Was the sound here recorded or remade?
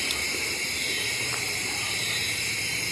remade